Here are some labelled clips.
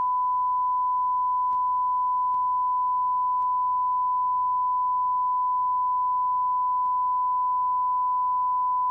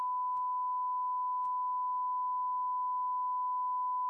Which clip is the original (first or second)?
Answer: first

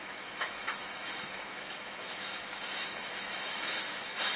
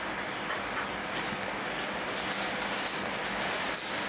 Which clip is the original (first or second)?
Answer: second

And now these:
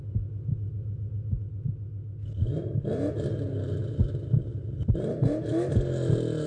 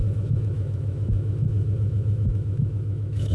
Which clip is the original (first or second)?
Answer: first